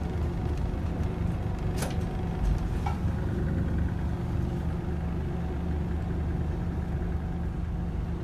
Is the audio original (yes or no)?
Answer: yes